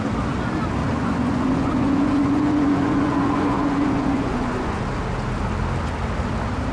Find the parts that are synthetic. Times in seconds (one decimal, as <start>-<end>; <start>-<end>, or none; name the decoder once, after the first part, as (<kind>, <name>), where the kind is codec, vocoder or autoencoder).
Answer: 0.8-4.8 (vocoder, Vocos)

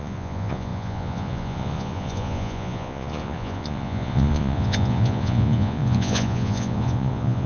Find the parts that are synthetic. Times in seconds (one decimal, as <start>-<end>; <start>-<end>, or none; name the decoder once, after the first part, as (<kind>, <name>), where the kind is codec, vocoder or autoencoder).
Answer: 0.0-7.5 (vocoder, Vocos)

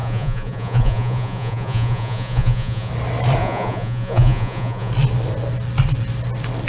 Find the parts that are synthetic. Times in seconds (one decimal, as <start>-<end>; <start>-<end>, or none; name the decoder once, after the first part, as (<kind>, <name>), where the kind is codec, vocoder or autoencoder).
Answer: 0.0-2.9 (vocoder, Vocos); 3.4-4.9

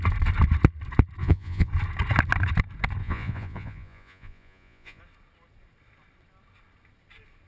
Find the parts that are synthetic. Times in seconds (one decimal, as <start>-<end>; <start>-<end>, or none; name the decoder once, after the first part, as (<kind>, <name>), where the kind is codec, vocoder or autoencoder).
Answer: 1.2-1.7 (vocoder, Vocos); 3.0-5.0

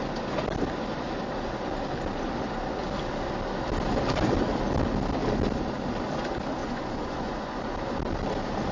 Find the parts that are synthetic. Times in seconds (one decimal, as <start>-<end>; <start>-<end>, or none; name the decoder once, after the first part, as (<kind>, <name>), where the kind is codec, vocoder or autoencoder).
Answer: 6.6-7.6 (vocoder, Vocos)

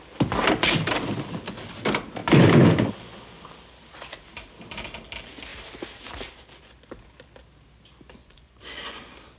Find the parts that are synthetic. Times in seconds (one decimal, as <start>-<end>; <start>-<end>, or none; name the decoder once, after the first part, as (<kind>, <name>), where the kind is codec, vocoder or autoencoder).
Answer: 8.2-9.0 (vocoder, Vocos)